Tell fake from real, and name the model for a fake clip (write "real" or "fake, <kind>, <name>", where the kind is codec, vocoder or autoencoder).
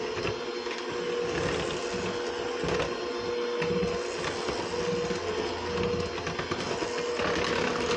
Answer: real